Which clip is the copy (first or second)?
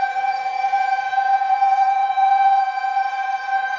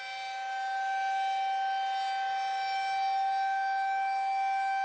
first